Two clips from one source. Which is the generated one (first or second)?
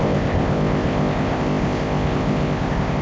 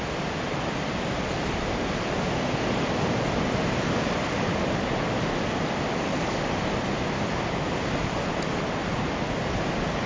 first